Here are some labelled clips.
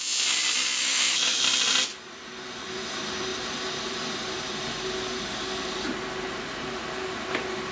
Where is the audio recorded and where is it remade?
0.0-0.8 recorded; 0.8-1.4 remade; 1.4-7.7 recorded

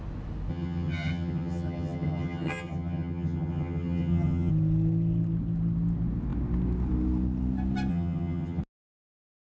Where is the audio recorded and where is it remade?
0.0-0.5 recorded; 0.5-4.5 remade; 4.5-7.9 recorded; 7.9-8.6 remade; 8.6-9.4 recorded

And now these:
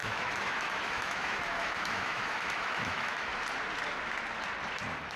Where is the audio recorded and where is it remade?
0.0-3.3 remade; 3.3-5.2 recorded